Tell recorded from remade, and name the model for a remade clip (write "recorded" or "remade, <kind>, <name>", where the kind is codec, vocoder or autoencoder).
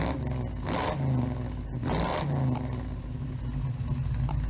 recorded